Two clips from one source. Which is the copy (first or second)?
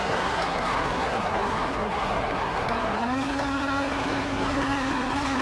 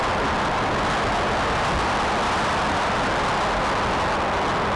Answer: first